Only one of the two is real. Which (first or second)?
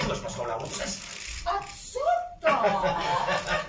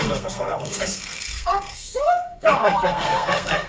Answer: first